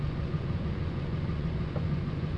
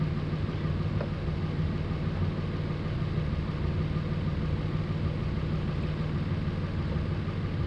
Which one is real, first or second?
second